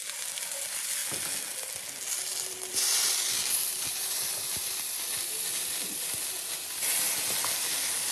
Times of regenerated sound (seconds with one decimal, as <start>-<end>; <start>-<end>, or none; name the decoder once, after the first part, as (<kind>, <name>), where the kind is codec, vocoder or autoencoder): 2.3-6.2 (vocoder, BigVGAN v2)